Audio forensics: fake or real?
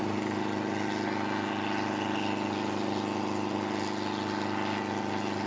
real